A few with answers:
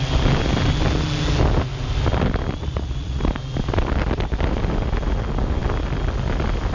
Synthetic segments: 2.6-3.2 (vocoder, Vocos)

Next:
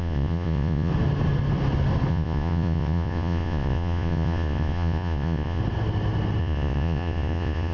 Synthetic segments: 0.0-0.9 (vocoder, Vocos); 2.1-5.6; 6.4-7.7

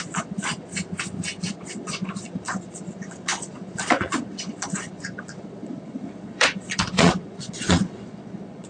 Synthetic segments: 0.0-0.7 (vocoder, Vocos); 1.4-8.7

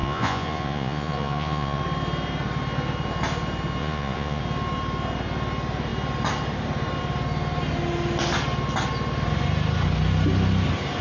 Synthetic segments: 0.0-1.8 (vocoder, Vocos); 3.8-4.4